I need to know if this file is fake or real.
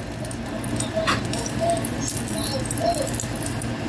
real